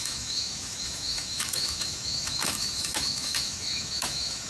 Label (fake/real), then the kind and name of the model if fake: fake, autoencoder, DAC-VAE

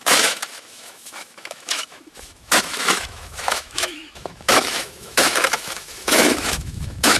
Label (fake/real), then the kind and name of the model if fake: fake, autoencoder, DAC-VAE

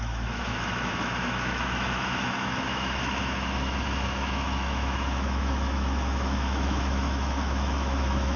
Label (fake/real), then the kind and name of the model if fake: fake, autoencoder, DAC-VAE